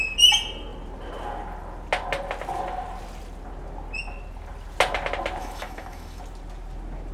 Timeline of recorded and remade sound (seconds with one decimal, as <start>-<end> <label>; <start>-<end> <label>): 0.0-5.4 recorded; 5.4-6.2 remade; 6.2-7.1 recorded